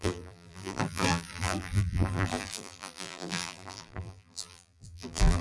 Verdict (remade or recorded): remade